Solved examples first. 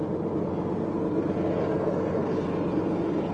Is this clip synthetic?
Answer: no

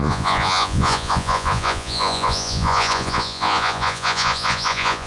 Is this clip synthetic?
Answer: yes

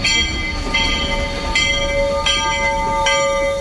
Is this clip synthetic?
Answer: no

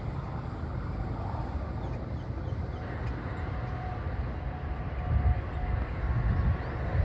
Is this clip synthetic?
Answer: no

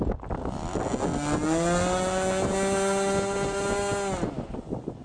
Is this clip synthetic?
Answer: no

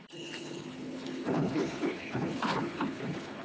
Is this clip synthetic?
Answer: yes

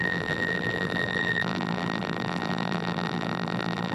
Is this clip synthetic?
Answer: yes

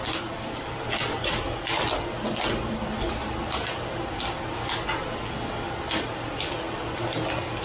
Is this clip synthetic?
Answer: no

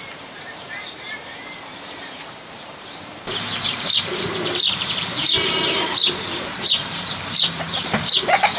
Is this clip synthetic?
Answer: yes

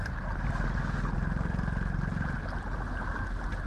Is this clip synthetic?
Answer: no